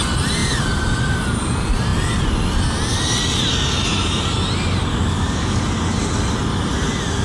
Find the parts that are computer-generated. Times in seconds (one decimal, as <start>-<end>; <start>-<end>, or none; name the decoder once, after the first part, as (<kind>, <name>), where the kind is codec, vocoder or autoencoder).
4.9-5.6 (codec, DAC)